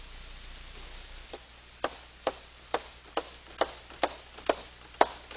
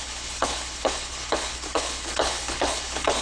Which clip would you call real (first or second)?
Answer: first